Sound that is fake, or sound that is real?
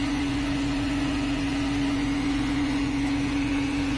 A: fake